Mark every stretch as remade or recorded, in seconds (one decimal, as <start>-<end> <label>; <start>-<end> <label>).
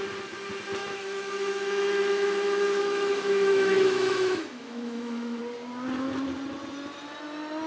0.0-0.8 recorded; 0.8-5.4 remade; 5.4-7.7 recorded